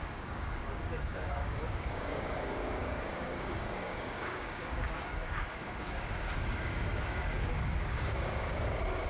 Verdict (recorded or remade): remade